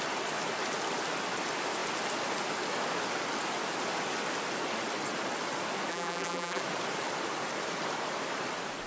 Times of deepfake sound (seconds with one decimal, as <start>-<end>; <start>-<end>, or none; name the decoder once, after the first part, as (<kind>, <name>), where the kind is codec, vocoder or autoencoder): 5.9-6.6 (vocoder, BigVGAN v2)